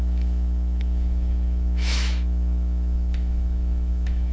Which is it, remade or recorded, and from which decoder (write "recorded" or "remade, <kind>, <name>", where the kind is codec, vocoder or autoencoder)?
remade, autoencoder, DAC-VAE